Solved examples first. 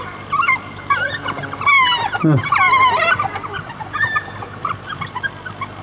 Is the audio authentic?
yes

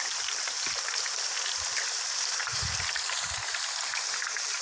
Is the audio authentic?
yes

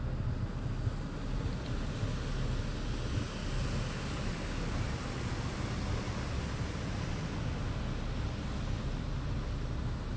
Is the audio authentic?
yes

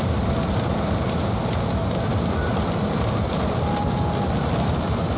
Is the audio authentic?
yes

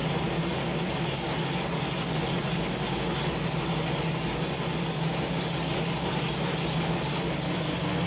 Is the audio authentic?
yes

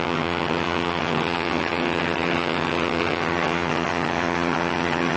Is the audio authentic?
no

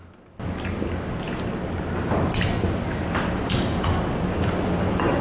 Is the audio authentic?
yes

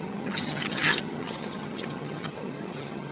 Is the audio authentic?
no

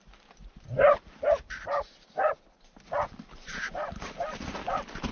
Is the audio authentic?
yes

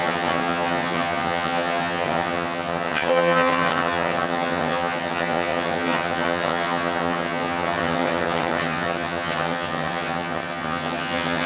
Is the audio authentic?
no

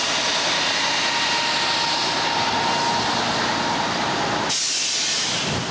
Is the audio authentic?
yes